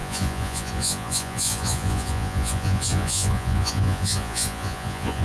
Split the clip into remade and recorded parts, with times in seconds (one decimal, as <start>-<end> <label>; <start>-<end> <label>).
0.0-5.2 remade